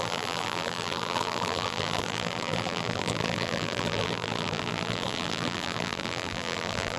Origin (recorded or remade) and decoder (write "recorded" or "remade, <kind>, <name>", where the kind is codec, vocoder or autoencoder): remade, vocoder, BigVGAN v2